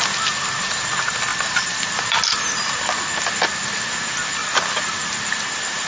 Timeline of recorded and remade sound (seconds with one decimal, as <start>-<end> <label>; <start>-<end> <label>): 0.0-1.3 recorded; 1.3-3.0 remade; 3.0-4.4 recorded; 4.4-5.9 remade

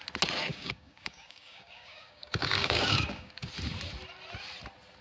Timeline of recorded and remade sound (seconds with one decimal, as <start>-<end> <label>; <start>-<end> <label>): 0.0-0.5 recorded; 0.5-3.5 remade; 3.5-5.0 recorded

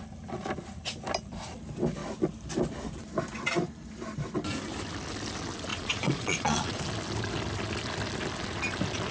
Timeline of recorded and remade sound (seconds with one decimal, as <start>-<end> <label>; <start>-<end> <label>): 0.0-5.7 recorded; 5.7-6.8 remade; 6.8-9.1 recorded

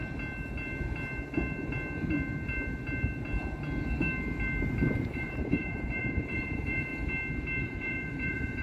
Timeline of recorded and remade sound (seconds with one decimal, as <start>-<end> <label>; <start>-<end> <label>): 0.0-5.0 recorded; 5.0-6.9 remade; 6.9-7.6 recorded; 7.6-8.6 remade

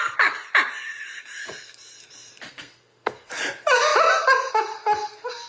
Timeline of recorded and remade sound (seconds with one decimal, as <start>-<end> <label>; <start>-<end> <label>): 0.0-2.5 recorded; 2.5-3.3 remade; 3.3-5.5 recorded